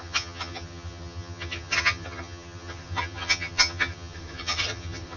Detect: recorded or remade remade